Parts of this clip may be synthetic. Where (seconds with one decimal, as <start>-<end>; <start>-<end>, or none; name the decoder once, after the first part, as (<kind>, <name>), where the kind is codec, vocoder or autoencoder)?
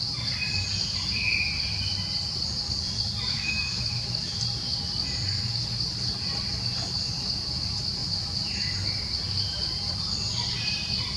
3.3-4.4 (autoencoder, DAC-VAE)